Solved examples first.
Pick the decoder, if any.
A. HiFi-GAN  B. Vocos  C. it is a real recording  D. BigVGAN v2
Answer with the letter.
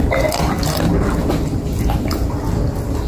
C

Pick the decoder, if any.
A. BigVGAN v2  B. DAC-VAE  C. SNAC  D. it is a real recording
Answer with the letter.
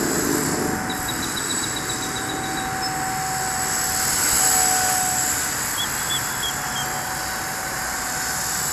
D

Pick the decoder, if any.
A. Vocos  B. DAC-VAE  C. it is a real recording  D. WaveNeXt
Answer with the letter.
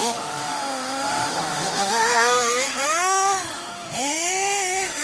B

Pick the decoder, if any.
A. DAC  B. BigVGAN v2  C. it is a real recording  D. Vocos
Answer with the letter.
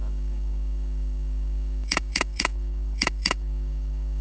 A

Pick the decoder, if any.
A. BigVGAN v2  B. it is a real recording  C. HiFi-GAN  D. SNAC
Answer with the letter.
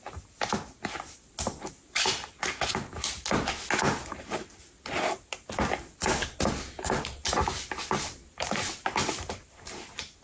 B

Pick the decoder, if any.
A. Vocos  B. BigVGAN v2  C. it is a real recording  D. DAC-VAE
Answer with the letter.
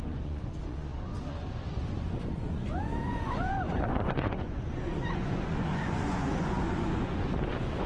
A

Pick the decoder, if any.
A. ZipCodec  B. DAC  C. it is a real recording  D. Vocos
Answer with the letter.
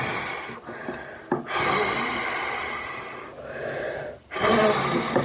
C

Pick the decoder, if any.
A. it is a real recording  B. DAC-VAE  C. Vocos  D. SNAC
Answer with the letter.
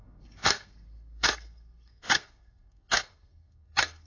D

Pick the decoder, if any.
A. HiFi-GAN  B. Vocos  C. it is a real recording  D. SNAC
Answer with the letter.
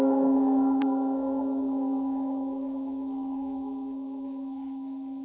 D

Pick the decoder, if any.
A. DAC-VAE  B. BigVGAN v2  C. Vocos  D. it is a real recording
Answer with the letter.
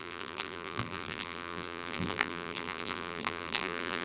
B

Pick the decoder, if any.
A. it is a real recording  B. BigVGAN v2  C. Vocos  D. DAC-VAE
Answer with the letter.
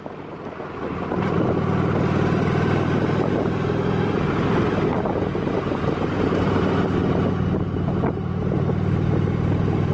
A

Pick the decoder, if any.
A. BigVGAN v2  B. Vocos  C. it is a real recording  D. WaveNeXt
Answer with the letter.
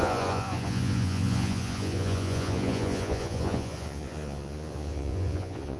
B